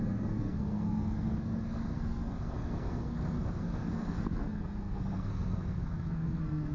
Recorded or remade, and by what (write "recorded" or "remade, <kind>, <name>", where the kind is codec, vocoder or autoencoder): remade, codec, SNAC